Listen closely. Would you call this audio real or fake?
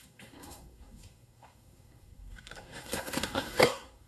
fake